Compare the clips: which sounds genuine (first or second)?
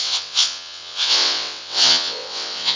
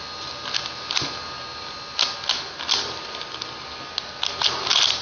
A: second